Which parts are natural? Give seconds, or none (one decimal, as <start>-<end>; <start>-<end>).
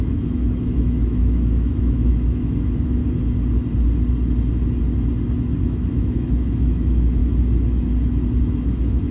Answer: 3.0-5.6; 7.2-8.4